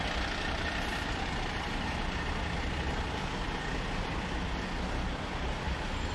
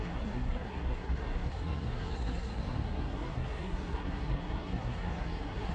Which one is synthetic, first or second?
second